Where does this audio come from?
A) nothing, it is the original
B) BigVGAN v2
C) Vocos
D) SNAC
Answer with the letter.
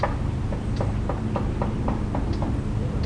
A